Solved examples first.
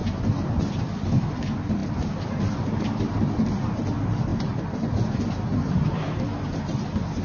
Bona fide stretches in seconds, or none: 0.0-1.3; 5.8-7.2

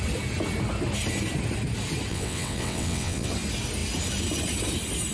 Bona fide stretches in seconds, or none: 0.0-2.1; 3.3-5.1

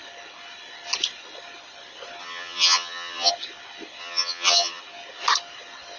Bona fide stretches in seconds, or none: 0.0-2.2; 3.3-4.0; 4.8-6.0